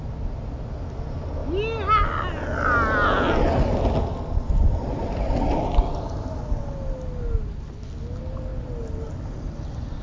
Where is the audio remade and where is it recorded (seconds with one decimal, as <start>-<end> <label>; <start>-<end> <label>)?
0.0-10.0 recorded